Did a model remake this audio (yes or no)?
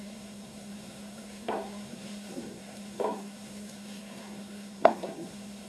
yes